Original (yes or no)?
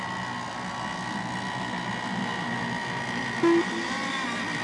yes